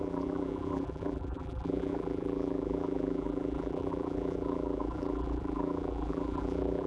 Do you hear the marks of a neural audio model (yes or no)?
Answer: yes